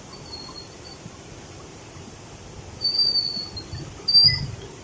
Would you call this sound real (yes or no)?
yes